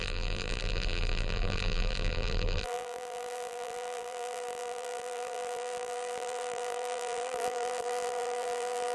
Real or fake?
fake